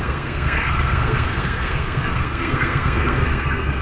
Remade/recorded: remade